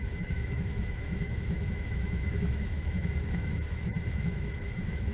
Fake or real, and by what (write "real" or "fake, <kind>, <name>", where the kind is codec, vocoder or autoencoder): fake, autoencoder, DAC-VAE